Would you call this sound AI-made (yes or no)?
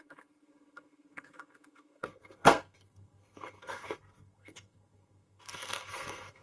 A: yes